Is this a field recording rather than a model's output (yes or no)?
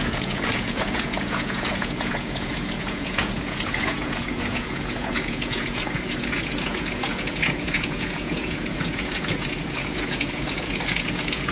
no